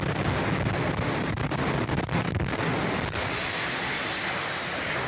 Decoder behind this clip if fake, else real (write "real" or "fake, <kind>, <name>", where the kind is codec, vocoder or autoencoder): real